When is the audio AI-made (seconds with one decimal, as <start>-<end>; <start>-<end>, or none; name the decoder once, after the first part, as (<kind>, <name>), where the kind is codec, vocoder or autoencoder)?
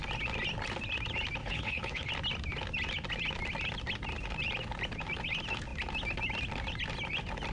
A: 1.4-2.1 (codec, HILCodec)